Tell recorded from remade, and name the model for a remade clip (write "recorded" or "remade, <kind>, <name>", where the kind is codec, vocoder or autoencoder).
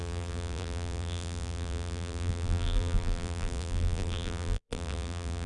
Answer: remade, vocoder, BigVGAN v2